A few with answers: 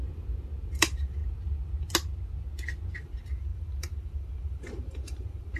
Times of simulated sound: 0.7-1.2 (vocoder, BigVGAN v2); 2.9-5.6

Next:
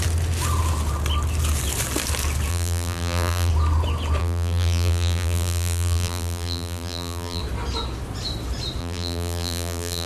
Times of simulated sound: 2.5-3.5 (vocoder, BigVGAN v2); 4.2-7.4; 8.8-10.1

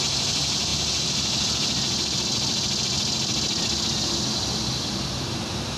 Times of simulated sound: none

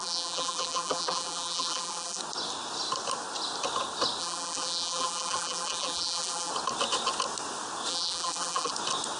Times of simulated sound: 0.0-2.2 (vocoder, BigVGAN v2); 4.2-6.5; 7.9-8.7

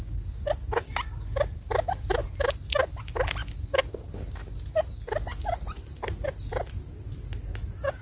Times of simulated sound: 2.2-3.0 (vocoder, BigVGAN v2)

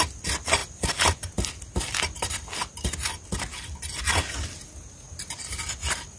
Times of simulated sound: none